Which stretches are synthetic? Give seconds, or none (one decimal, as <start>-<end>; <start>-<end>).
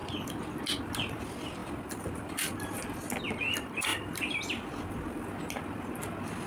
1.6-2.6; 3.9-4.8